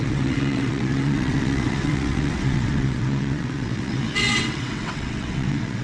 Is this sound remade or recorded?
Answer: remade